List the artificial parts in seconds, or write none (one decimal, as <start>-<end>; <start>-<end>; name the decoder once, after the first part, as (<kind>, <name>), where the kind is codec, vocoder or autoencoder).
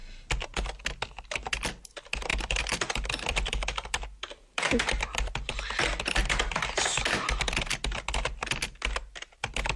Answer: 2.3-5.7 (vocoder, BigVGAN v2); 6.2-6.8